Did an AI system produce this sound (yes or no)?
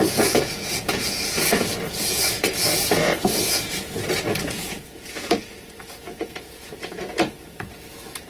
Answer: yes